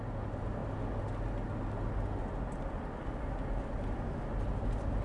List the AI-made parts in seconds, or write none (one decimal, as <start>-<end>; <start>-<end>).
none